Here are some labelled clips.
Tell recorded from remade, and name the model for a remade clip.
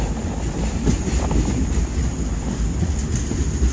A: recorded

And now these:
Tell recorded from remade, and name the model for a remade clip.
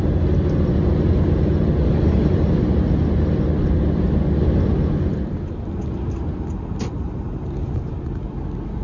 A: recorded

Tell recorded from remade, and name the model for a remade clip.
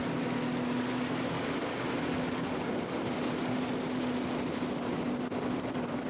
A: recorded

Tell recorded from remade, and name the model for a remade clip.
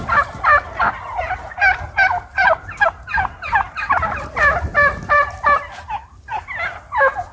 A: recorded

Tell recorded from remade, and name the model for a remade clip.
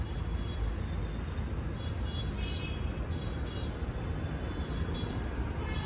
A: recorded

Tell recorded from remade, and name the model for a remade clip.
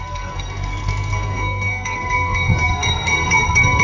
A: remade, codec, SNAC